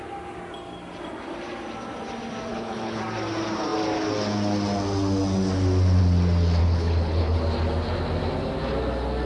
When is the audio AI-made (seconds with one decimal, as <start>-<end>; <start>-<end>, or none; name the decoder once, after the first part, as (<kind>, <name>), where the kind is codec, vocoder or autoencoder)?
2.5-3.0 (codec, HILCodec); 6.6-7.4